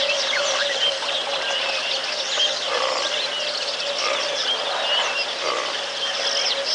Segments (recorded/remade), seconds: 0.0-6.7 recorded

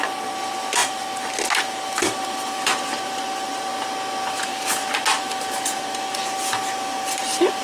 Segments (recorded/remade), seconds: 0.0-7.6 recorded

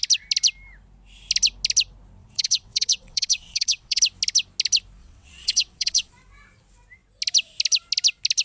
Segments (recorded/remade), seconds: 0.0-2.2 recorded; 2.2-4.0 remade; 4.0-5.0 recorded; 5.0-6.1 remade; 6.1-8.4 recorded

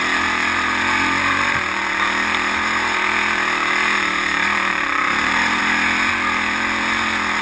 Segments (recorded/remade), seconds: 0.0-4.7 recorded; 4.7-5.6 remade; 5.6-7.4 recorded

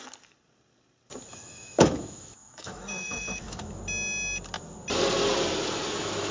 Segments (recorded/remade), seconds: 0.0-1.3 recorded; 1.3-3.8 remade; 3.8-6.3 recorded

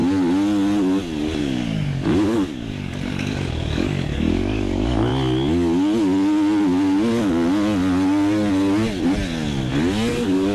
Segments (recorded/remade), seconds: 0.0-1.4 recorded; 1.4-5.1 remade; 5.1-10.1 recorded; 10.1-10.5 remade

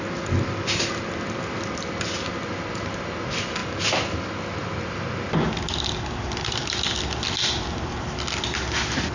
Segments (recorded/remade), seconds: 0.0-9.1 recorded

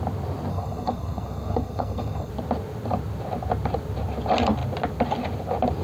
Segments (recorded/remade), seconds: 0.0-0.5 recorded; 0.5-2.3 remade; 2.3-5.8 recorded